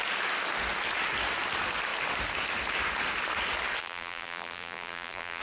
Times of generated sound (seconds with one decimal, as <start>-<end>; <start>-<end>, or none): 3.8-5.4

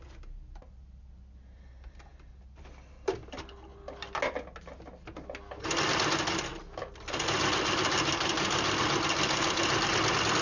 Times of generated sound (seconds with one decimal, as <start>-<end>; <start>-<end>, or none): none

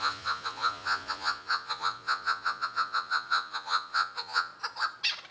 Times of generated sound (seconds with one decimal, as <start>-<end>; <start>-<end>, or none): 0.0-4.5

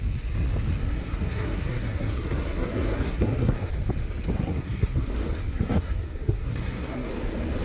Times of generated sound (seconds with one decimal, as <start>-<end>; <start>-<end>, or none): 0.8-3.7; 4.3-5.1; 5.5-7.1

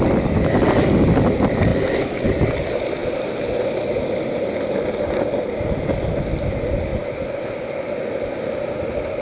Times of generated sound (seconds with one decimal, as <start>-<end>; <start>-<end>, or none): none

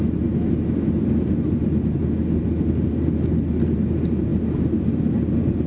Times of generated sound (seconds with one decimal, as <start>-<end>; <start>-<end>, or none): none

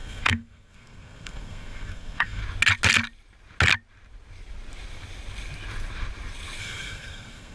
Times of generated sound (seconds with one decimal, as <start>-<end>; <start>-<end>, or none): 0.0-2.4; 6.6-7.5

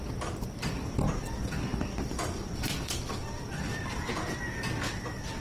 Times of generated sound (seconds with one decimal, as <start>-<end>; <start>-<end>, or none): none